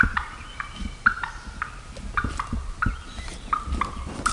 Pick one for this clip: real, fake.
real